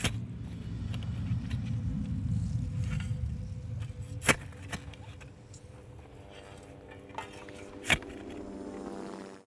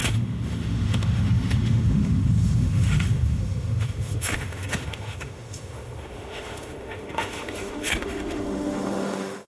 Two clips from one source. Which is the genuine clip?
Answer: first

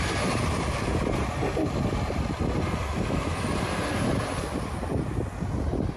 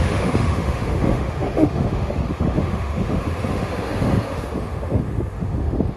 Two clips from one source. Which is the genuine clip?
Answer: first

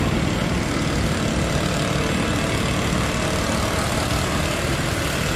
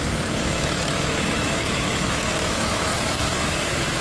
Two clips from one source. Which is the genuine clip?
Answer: first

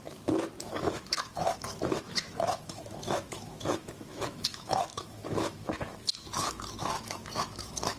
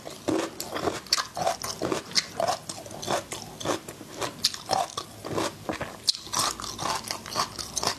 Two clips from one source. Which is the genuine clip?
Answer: second